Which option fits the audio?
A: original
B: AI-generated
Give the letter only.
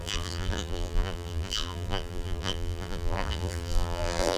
B